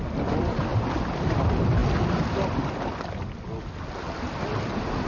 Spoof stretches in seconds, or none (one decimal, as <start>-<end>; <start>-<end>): none